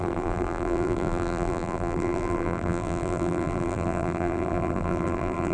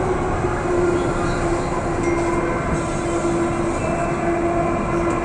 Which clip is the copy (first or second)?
first